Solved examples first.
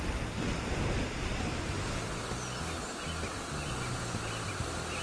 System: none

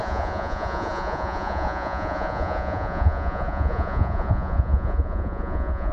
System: vocoder, Vocos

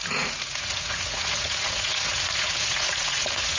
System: vocoder, Vocos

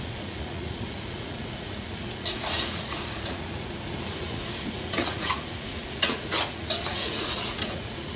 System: vocoder, Vocos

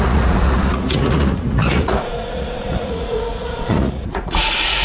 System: vocoder, Vocos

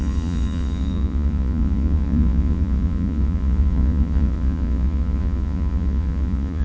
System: vocoder, Vocos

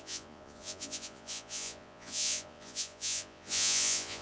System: vocoder, Vocos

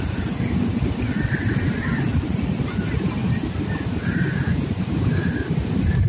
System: none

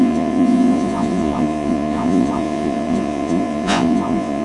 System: vocoder, Vocos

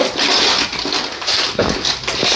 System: none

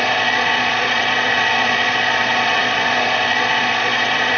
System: vocoder, Vocos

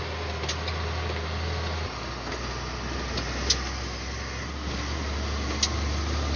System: none